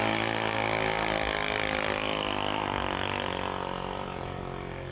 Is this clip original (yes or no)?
yes